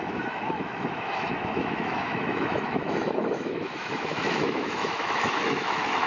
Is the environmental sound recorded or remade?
remade